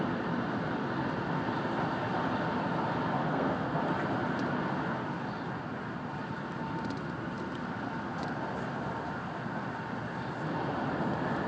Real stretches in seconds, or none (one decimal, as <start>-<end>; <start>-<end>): 0.0-3.3; 3.8-11.5